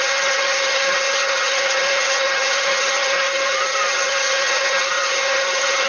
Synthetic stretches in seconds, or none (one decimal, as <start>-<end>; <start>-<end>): 0.0-5.9